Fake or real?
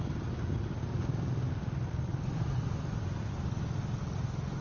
real